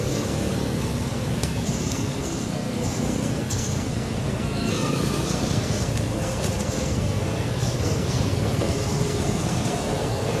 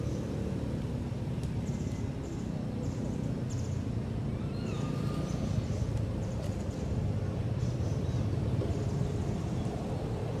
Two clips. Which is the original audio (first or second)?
second